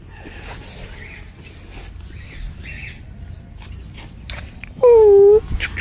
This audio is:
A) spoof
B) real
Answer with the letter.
B